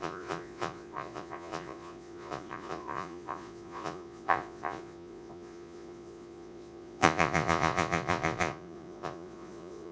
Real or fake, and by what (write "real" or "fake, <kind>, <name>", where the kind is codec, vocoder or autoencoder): fake, vocoder, Vocos